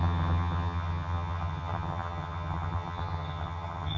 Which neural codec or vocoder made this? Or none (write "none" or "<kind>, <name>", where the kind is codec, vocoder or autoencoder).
vocoder, HiFi-GAN